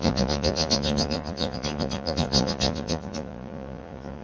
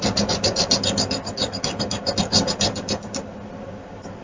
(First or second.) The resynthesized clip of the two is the first